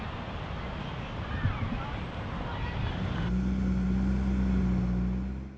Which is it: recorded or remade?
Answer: recorded